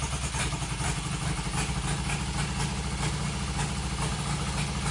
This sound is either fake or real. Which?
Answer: real